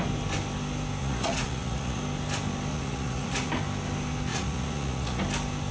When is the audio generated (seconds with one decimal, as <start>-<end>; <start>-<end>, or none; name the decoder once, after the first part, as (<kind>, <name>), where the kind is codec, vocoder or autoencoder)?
1.0-2.0 (vocoder, Vocos); 2.7-3.5; 4.3-5.2